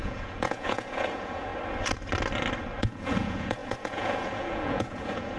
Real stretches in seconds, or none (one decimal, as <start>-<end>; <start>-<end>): 1.5-2.8